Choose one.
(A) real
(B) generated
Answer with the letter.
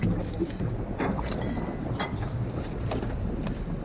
A